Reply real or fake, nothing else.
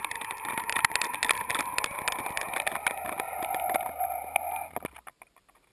real